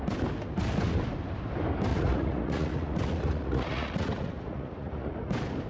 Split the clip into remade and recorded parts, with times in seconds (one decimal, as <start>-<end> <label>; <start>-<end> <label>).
0.0-1.9 recorded; 1.9-5.3 remade; 5.3-5.7 recorded

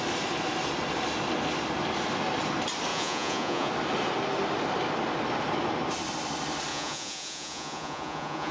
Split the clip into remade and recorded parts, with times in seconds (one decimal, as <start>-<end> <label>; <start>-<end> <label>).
0.0-2.9 recorded; 2.9-3.7 remade; 3.7-6.7 recorded; 6.7-8.5 remade

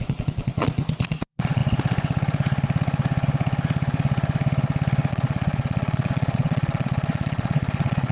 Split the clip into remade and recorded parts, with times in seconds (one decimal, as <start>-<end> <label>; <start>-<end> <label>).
0.0-1.6 remade; 1.6-5.1 recorded; 5.1-8.1 remade

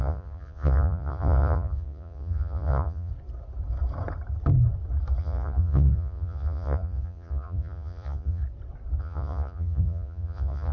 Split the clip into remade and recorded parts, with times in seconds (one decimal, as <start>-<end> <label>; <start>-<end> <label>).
0.0-3.1 remade; 3.1-5.2 recorded; 5.2-8.4 remade; 8.4-9.0 recorded; 9.0-10.7 remade